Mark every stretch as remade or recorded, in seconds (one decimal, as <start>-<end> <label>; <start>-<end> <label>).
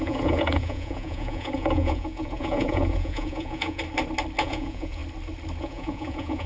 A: 0.0-3.8 remade; 3.8-4.4 recorded; 4.4-5.0 remade; 5.0-5.6 recorded; 5.6-6.5 remade